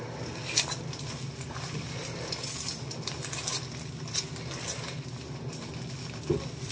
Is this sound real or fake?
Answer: real